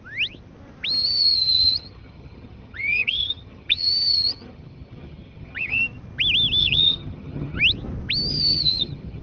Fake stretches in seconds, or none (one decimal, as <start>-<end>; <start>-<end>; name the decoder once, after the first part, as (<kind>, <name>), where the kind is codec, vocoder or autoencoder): 1.0-5.8 (vocoder, HiFi-GAN); 6.6-7.6; 8.3-9.2